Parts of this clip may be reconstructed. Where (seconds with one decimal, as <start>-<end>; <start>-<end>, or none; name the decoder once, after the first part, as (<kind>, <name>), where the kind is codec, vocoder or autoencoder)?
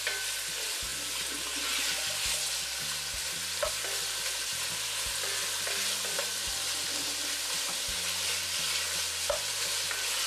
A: none